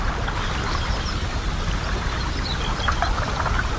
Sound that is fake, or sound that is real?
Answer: real